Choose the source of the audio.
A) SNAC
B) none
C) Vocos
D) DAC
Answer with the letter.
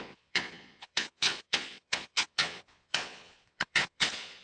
C